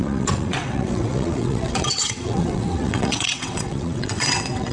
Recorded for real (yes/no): no